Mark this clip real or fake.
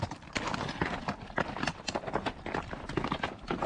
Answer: real